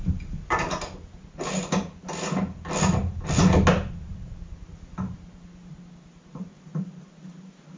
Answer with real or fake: real